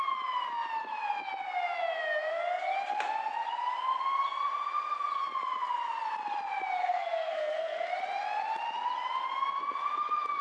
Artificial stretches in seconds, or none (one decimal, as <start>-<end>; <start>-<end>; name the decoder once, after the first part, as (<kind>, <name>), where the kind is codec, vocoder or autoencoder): 6.8-7.9 (codec, SNAC)